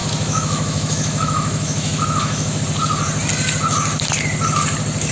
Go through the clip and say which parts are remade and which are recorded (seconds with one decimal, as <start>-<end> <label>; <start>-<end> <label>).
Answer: 0.0-2.6 remade; 2.6-5.1 recorded